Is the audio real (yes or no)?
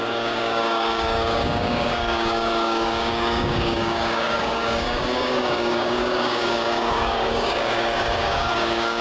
no